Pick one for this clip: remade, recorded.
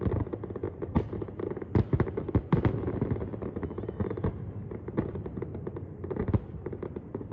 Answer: recorded